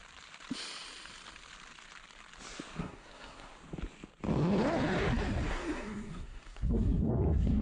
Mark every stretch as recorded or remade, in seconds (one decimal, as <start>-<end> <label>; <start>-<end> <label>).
0.0-2.8 recorded; 2.8-3.5 remade; 3.5-5.5 recorded; 5.5-7.6 remade